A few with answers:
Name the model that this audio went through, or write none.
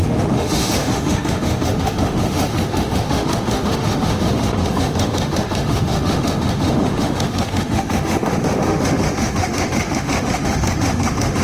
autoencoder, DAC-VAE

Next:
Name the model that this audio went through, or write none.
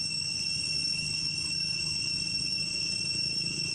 none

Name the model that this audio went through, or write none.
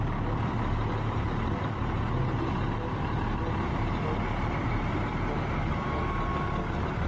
none